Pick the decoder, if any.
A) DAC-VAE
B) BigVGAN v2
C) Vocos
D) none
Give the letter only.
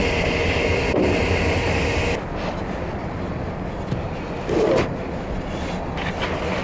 D